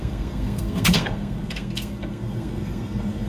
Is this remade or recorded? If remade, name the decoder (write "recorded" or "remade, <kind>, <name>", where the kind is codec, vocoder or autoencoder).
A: remade, codec, SNAC